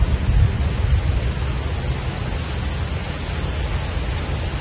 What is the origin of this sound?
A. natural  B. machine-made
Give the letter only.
A